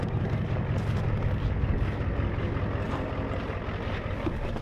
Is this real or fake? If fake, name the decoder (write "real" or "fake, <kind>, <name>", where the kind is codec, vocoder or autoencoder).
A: real